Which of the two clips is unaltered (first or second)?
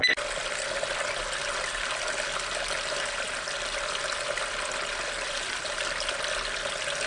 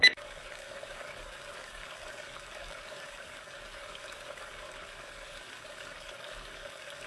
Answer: first